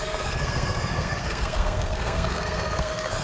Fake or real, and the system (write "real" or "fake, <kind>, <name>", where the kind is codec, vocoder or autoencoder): fake, codec, SNAC